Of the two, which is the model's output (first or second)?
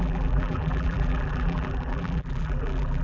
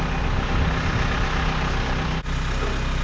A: first